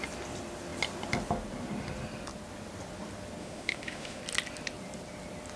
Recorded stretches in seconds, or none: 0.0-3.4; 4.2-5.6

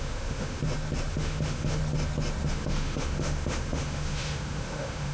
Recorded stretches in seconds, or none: 0.6-1.1; 1.8-2.5

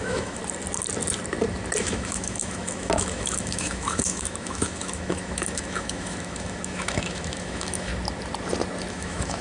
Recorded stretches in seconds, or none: 0.4-1.8; 7.9-8.9

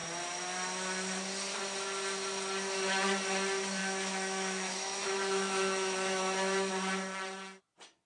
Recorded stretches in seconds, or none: 0.0-3.8; 6.7-8.1